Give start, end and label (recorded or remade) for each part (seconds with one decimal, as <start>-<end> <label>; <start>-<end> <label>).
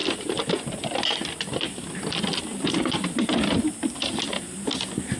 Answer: 0.0-5.2 recorded